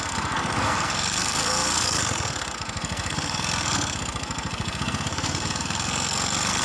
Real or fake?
fake